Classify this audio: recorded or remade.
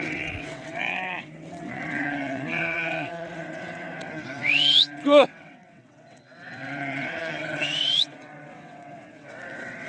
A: remade